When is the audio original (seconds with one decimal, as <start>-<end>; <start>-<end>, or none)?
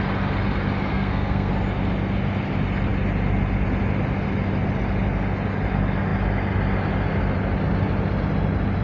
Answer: 0.0-0.9; 1.5-8.8